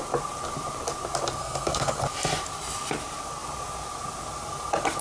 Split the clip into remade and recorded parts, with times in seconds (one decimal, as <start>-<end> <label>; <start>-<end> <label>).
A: 0.0-1.4 recorded; 1.4-2.0 remade; 2.0-5.0 recorded